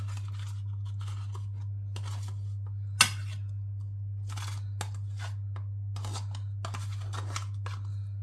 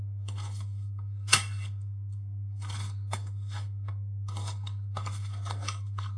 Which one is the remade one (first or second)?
second